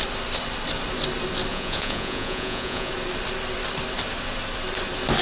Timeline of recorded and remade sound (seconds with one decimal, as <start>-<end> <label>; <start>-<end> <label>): 0.0-1.5 recorded; 1.5-2.9 remade; 2.9-5.2 recorded